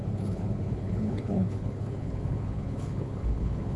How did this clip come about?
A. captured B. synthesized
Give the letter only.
B